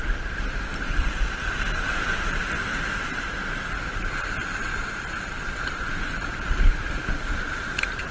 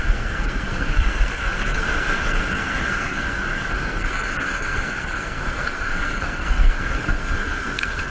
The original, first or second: first